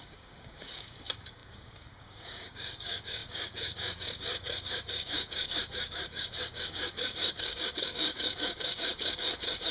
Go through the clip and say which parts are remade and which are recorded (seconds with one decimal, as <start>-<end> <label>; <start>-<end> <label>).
0.0-9.7 remade